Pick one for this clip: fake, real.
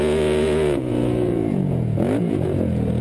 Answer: fake